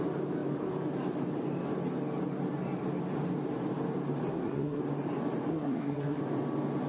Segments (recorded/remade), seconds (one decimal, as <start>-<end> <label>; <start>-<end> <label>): 0.0-4.3 recorded; 4.3-4.8 remade; 4.8-5.5 recorded; 5.5-6.2 remade; 6.2-6.9 recorded

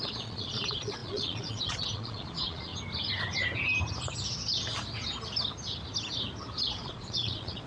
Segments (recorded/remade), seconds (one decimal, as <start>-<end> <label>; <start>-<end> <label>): 0.0-2.7 remade; 2.7-6.7 recorded; 6.7-7.7 remade

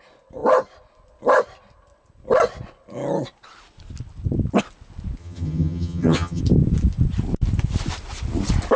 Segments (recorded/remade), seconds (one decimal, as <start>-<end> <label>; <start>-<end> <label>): 0.0-5.2 recorded; 5.2-6.4 remade; 6.4-8.8 recorded

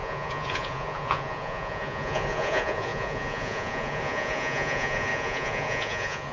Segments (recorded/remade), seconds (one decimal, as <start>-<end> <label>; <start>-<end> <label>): 0.0-6.3 remade

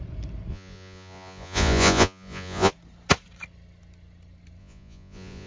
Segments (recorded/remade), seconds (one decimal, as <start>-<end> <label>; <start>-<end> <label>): 0.0-0.5 recorded; 0.5-2.7 remade; 2.7-4.6 recorded; 4.6-5.5 remade